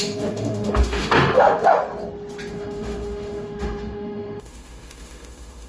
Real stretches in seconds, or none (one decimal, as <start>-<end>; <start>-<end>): 1.8-2.5